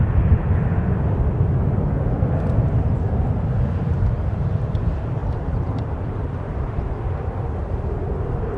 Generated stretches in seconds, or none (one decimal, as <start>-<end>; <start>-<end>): 5.2-6.9